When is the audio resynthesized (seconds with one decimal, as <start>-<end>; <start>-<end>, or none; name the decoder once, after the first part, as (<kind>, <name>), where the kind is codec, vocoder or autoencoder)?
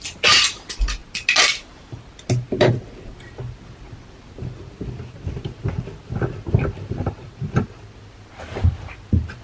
none